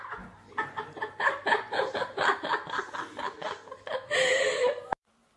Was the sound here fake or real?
real